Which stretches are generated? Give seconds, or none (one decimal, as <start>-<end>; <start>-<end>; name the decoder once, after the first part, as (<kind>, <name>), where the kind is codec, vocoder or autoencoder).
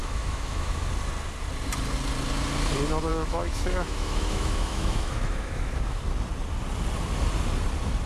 0.0-0.9 (autoencoder, DAC-VAE); 3.1-6.0